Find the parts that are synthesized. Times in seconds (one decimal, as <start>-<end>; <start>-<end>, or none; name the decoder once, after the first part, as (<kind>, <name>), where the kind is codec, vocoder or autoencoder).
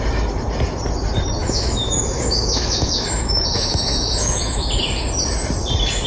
1.4-4.7 (autoencoder, DAC-VAE)